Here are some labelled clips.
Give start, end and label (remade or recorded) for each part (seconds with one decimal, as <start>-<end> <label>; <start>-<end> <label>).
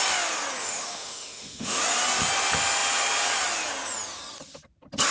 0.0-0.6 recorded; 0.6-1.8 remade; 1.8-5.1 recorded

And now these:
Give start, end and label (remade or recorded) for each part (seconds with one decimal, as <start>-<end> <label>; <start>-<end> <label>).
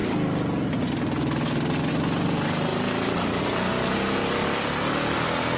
0.0-5.6 recorded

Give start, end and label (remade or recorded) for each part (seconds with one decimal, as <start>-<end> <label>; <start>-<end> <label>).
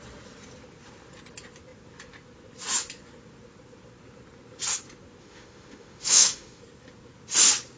0.0-5.2 recorded; 5.2-6.6 remade; 6.6-7.8 recorded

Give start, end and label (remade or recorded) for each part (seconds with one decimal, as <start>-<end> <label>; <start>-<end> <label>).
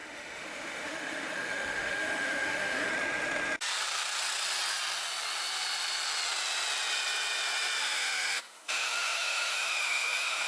0.0-2.9 remade; 2.9-7.8 recorded; 7.8-10.5 remade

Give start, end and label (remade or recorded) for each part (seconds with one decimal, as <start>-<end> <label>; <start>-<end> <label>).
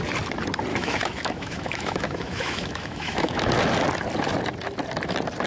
0.0-0.7 recorded; 0.7-3.5 remade; 3.5-5.5 recorded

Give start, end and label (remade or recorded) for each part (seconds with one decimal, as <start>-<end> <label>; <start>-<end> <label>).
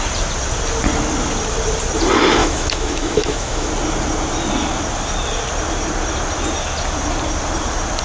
0.0-2.4 recorded; 2.4-3.7 remade; 3.7-8.0 recorded